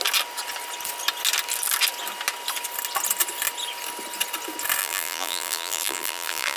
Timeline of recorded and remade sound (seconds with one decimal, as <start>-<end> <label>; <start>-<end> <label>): 0.0-4.8 recorded; 4.8-6.6 remade

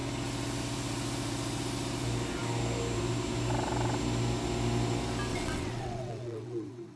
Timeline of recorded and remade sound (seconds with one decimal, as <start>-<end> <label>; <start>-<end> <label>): 0.0-5.3 recorded; 5.3-7.0 remade

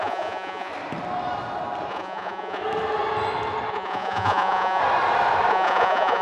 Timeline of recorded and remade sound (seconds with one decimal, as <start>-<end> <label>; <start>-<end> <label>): 0.0-0.7 remade; 0.7-1.9 recorded; 1.9-2.6 remade; 2.6-3.7 recorded; 3.7-4.8 remade; 4.8-5.5 recorded; 5.5-6.2 remade